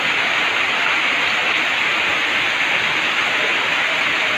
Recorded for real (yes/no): yes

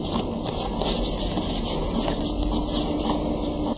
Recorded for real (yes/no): yes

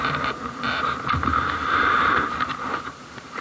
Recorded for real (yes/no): no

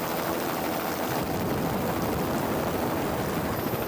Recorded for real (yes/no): yes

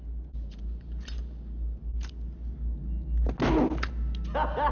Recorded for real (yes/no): yes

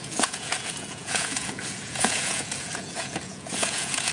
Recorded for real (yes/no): no